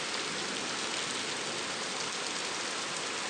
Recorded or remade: recorded